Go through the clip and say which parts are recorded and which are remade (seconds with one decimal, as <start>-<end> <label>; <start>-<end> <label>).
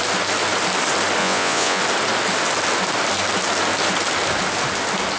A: 0.0-1.2 recorded; 1.2-1.8 remade; 1.8-5.2 recorded